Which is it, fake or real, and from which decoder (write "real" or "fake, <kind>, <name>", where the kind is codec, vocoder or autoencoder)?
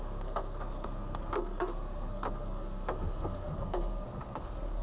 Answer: fake, codec, SNAC